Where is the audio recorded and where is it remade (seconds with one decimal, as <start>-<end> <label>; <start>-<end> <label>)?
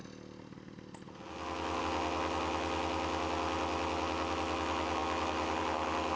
0.0-6.2 recorded